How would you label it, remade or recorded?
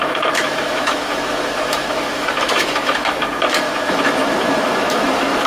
remade